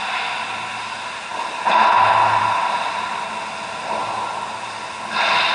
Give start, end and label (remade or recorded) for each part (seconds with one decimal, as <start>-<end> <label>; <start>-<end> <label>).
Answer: 0.0-5.5 recorded